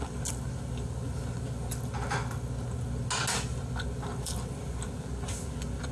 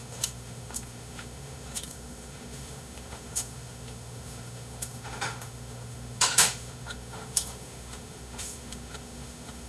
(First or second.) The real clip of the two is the first